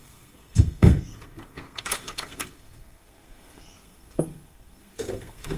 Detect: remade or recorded remade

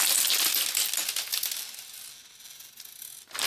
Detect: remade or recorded recorded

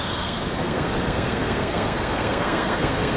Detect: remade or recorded remade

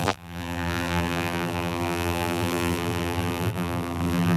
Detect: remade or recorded remade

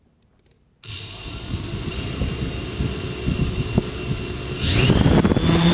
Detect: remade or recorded recorded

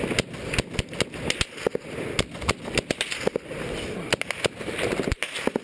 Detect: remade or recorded recorded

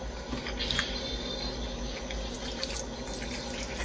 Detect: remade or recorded recorded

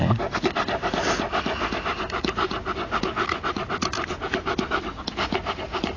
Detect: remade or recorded recorded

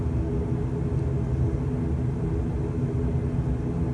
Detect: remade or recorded recorded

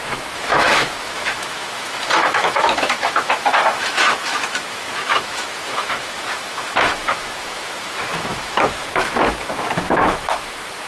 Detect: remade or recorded remade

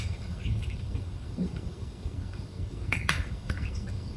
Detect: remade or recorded remade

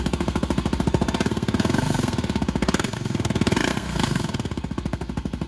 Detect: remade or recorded remade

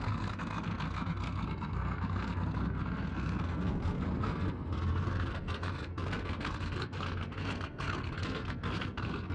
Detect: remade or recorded remade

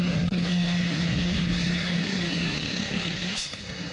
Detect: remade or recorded remade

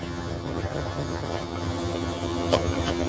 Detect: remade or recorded remade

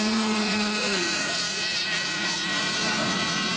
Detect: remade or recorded remade